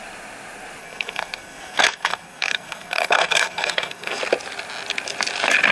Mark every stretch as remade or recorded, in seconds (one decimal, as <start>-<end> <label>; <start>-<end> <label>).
0.0-0.8 recorded; 0.8-4.2 remade; 4.2-5.7 recorded